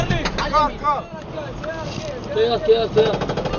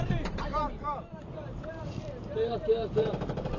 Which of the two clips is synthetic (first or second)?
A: second